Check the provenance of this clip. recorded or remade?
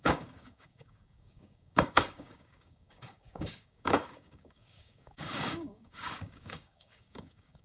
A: remade